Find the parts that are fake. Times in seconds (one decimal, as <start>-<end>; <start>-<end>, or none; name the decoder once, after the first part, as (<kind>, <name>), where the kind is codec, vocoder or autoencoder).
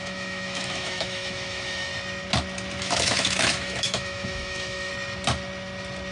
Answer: 0.0-1.9 (autoencoder, DAC-VAE); 2.8-4.9